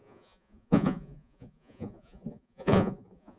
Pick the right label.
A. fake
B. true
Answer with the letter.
A